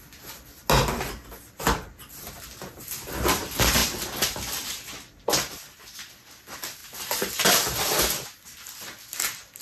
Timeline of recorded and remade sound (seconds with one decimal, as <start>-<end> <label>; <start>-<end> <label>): 0.0-9.6 recorded